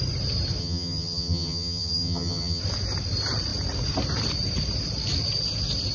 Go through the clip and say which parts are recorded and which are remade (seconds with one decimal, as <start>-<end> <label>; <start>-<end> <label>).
0.0-0.6 recorded; 0.6-2.6 remade; 2.6-5.9 recorded